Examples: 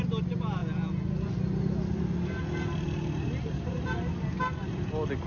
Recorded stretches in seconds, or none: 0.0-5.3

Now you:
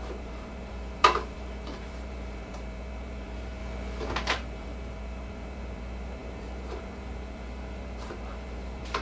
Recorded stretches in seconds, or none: 3.6-4.3

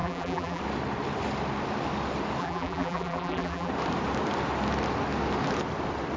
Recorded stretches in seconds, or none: 0.6-2.4; 3.7-6.2

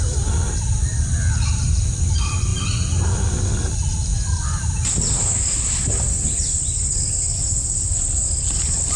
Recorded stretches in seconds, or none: none

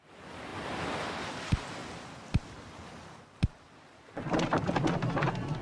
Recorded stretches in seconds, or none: 0.0-0.5; 1.3-5.6